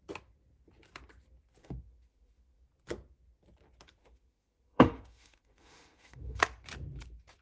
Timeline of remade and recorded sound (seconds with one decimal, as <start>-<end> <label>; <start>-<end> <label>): 0.0-1.6 recorded; 1.6-2.6 remade; 2.6-4.0 recorded; 4.0-6.4 remade; 6.4-7.4 recorded